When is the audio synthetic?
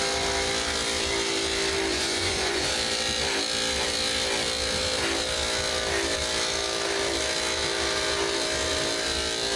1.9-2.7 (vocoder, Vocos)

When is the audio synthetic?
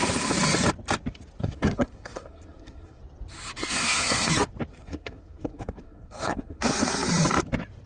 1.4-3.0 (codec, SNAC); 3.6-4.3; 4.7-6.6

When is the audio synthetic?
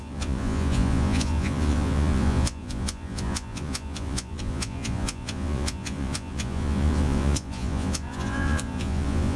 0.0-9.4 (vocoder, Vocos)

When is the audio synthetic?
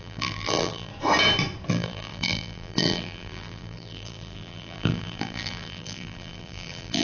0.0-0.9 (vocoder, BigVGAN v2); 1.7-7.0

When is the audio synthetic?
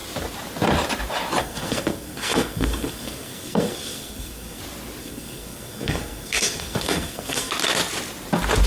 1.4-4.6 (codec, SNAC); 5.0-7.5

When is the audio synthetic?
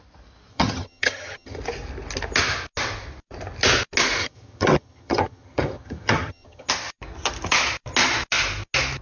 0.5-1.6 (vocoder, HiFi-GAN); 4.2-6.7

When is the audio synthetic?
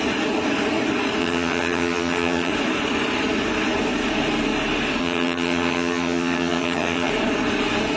1.2-2.5 (vocoder, HiFi-GAN); 5.0-7.1